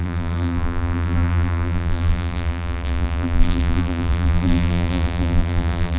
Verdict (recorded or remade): remade